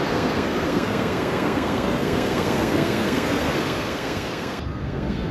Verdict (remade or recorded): remade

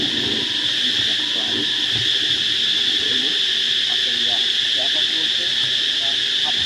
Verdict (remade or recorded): recorded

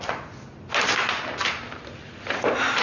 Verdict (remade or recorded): recorded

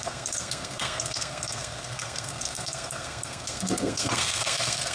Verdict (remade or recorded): remade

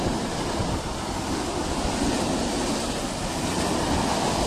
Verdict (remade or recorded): recorded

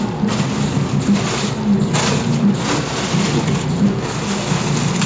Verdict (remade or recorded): recorded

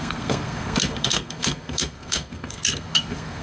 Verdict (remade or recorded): remade